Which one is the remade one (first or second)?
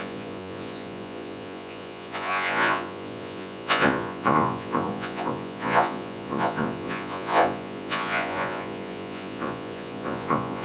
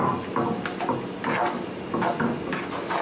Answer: first